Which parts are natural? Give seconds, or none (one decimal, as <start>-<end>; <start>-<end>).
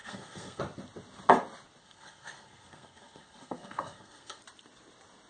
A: 0.6-1.8; 4.4-5.3